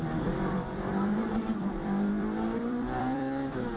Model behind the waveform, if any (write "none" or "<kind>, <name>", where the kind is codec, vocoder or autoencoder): vocoder, BigVGAN v2